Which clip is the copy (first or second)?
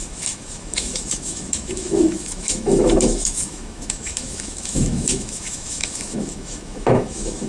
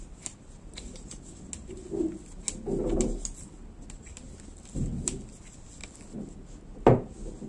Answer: first